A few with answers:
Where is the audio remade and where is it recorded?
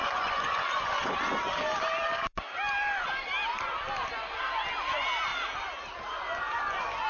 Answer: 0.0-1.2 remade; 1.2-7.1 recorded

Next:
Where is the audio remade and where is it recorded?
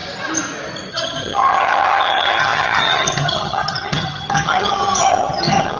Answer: 0.0-0.9 recorded; 0.9-5.8 remade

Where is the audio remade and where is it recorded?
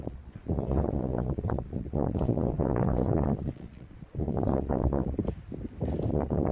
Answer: 0.0-5.2 remade; 5.2-6.1 recorded; 6.1-6.5 remade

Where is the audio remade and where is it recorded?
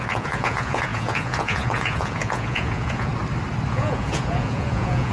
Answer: 0.0-3.1 remade; 3.1-3.7 recorded; 3.7-5.1 remade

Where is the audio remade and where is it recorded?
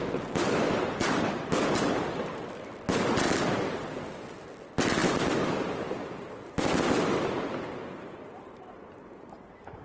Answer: 0.0-9.8 recorded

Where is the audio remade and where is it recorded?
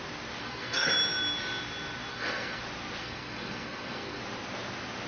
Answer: 0.0-0.4 recorded; 0.4-0.9 remade; 0.9-2.1 recorded; 2.1-2.6 remade; 2.6-3.0 recorded; 3.0-4.2 remade; 4.2-5.1 recorded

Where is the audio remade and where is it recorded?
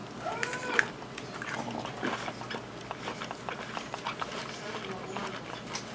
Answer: 0.0-5.9 recorded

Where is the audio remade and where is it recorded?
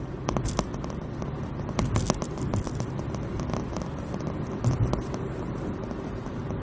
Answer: 0.0-6.6 recorded